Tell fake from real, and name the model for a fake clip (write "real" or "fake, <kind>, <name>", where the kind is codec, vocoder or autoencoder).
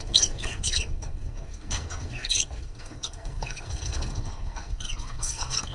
fake, codec, SNAC